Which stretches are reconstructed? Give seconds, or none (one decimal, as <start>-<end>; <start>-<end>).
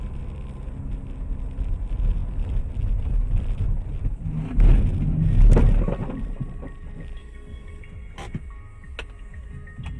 7.2-7.8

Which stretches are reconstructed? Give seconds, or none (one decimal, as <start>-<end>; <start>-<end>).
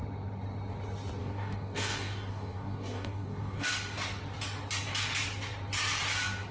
1.2-3.7